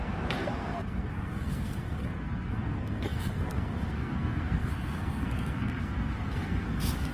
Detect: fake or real fake